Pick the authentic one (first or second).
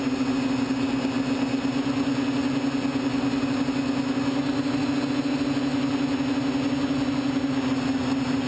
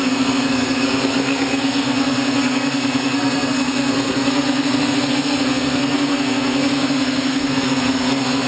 first